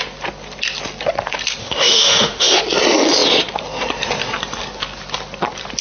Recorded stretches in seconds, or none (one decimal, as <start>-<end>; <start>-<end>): 0.0-1.6; 2.6-5.8

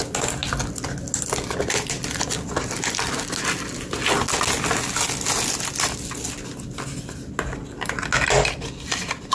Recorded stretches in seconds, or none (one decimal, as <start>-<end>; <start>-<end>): 0.0-9.3

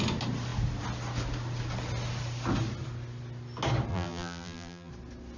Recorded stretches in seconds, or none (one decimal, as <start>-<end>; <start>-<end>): 0.0-3.9; 4.9-5.4

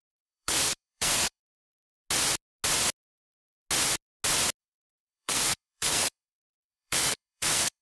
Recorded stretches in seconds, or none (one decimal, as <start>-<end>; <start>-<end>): 1.4-4.6

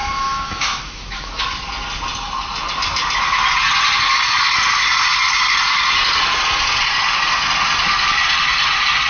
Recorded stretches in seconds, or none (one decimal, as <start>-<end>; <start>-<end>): 1.4-9.1

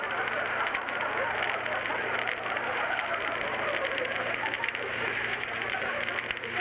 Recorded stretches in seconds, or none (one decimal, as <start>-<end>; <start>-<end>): 0.0-5.3; 5.9-6.6

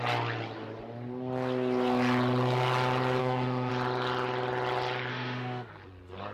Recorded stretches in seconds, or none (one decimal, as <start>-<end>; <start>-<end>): 0.0-3.2; 3.7-5.1; 5.7-6.3